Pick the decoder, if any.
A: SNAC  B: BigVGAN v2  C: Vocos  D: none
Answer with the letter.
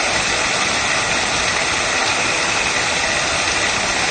D